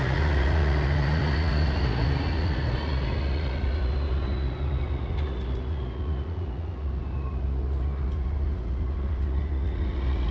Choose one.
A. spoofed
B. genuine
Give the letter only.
A